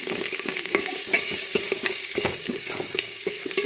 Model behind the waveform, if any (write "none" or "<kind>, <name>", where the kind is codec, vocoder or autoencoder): codec, DAC